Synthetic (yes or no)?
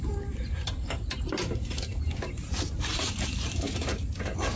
yes